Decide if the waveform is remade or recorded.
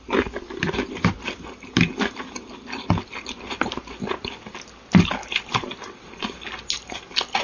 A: recorded